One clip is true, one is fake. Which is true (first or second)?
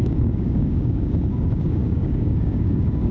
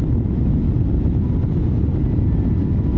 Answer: second